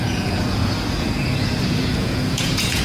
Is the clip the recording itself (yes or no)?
no